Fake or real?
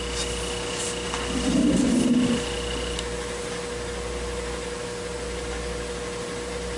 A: real